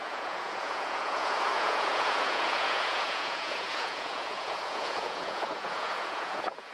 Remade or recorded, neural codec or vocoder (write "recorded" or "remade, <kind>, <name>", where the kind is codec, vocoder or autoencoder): remade, vocoder, Vocos